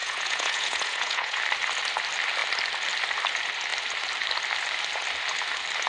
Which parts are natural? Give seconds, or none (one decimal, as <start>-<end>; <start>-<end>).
1.4-5.9